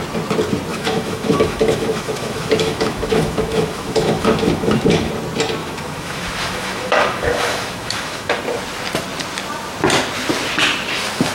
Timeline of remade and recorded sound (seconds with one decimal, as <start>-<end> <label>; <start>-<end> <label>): 0.0-0.7 recorded; 0.7-5.1 remade; 5.1-5.6 recorded; 5.6-8.4 remade; 8.4-11.3 recorded